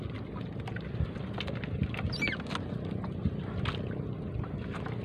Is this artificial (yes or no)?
no